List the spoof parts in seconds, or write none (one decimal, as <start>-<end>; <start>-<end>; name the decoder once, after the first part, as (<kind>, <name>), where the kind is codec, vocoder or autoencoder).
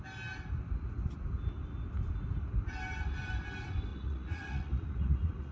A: 3.9-5.5 (vocoder, Vocos)